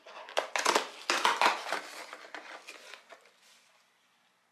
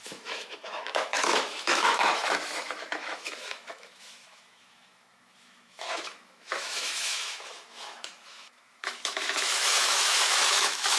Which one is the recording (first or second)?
first